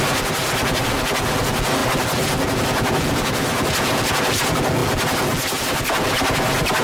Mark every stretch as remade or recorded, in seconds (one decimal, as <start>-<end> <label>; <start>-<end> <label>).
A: 0.0-6.8 recorded